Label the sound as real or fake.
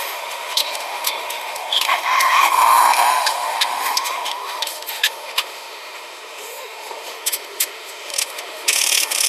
fake